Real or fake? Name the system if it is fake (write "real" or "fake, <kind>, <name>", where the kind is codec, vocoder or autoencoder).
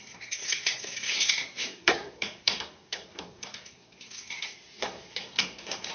fake, codec, SNAC